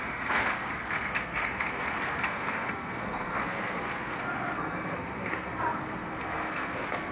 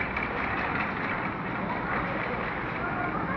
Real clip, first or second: second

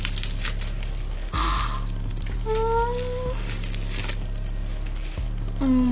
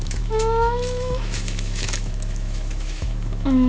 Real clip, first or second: first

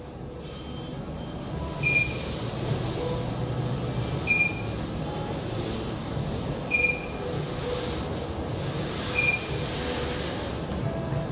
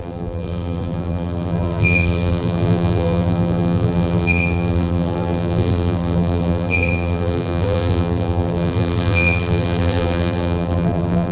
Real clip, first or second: first